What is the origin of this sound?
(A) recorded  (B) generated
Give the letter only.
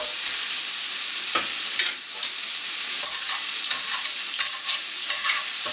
B